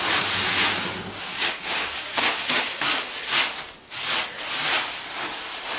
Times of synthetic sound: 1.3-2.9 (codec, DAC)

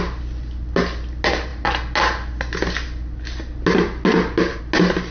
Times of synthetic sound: none